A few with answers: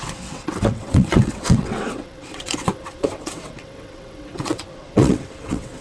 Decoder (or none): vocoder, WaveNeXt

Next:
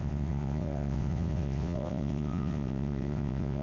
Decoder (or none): vocoder, WaveNeXt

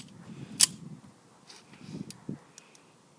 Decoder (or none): none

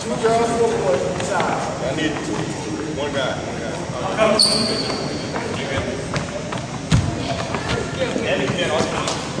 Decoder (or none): none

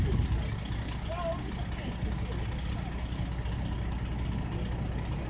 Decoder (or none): none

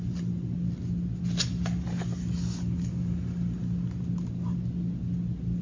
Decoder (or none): none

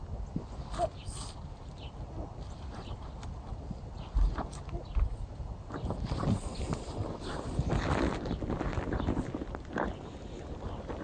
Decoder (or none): none